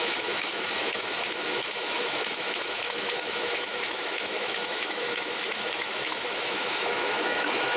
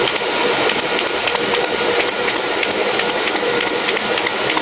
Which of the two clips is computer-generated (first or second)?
first